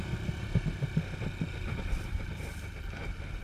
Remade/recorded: recorded